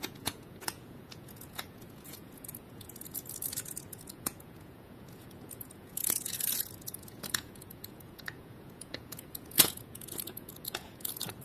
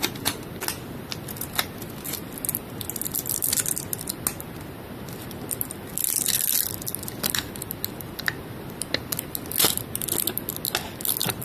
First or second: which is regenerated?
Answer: first